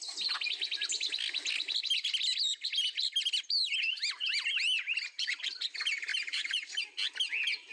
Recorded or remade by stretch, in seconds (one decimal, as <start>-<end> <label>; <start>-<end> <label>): 0.0-6.1 recorded; 6.1-6.8 remade; 6.8-7.7 recorded